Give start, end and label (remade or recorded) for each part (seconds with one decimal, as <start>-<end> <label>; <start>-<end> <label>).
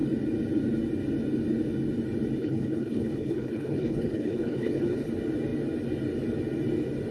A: 0.0-2.4 recorded; 2.4-5.1 remade; 5.1-7.1 recorded